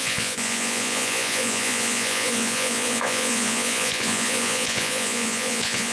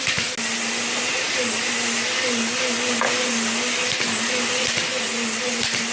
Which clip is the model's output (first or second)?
first